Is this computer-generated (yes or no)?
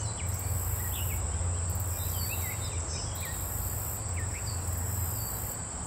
no